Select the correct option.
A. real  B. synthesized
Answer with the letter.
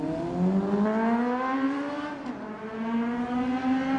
A